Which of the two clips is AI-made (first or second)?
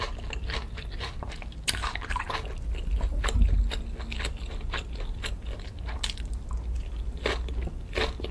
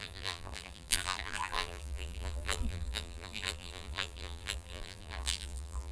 second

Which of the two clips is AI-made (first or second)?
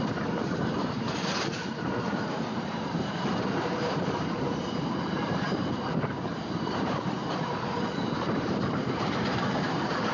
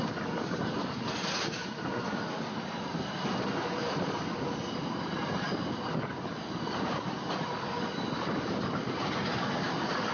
first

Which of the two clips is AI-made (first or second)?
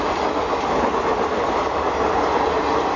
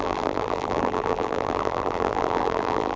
second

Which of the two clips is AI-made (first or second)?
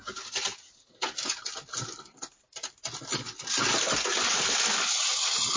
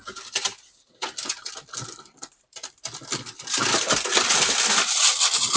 second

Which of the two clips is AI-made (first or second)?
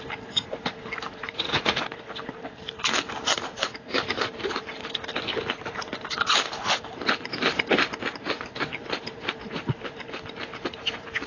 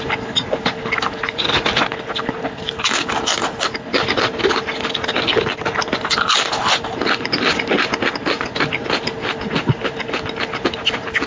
first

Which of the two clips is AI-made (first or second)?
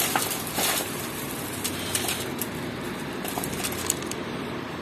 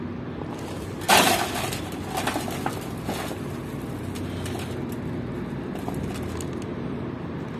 first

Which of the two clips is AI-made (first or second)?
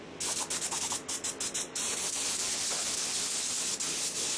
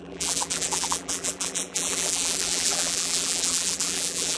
second